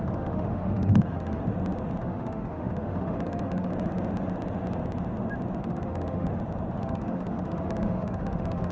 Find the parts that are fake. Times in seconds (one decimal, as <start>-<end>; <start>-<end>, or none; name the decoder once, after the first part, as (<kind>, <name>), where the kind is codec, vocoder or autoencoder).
0.0-1.4 (autoencoder, DAC-VAE); 2.0-3.7; 5.6-6.3; 6.8-8.7